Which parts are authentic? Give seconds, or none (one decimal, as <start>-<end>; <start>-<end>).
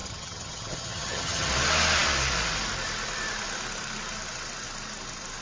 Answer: 1.5-5.4